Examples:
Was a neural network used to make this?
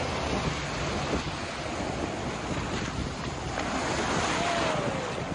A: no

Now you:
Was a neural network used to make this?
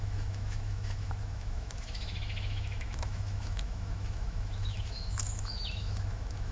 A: yes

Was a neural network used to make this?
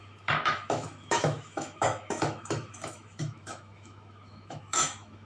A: yes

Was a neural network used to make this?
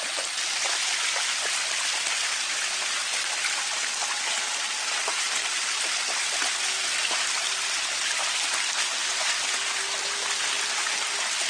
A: no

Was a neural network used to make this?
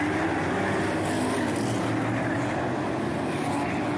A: no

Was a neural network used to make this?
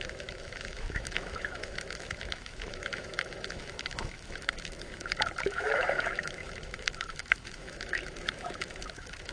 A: yes